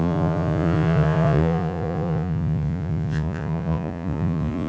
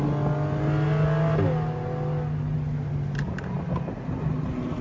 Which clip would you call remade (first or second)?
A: first